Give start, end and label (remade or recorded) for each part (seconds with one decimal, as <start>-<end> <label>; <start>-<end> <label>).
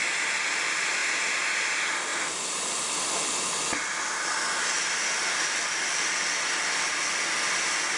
0.0-8.0 recorded